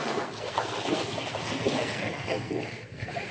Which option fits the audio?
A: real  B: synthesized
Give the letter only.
B